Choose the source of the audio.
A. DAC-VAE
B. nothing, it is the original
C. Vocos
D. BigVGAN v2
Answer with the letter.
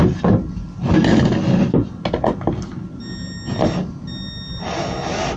B